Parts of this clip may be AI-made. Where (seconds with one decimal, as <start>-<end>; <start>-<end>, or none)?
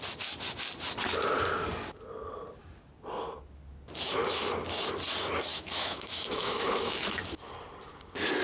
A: 5.5-7.2